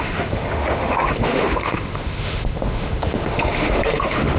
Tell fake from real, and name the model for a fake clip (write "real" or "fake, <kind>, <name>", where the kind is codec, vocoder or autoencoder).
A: fake, autoencoder, DAC-VAE